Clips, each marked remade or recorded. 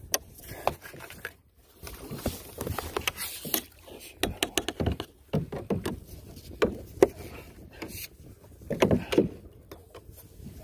recorded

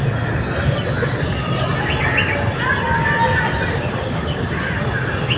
recorded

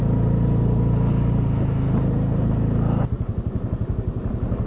recorded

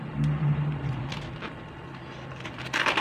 recorded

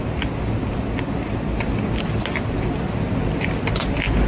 recorded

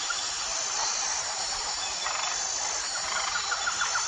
recorded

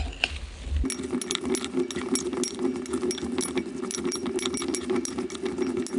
recorded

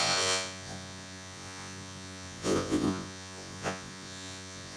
remade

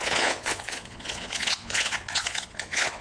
remade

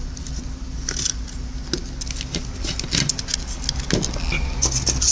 recorded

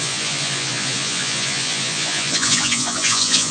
remade